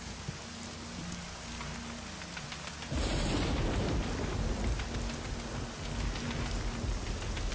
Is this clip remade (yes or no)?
no